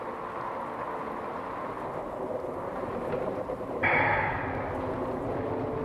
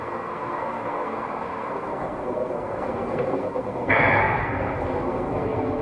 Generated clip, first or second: second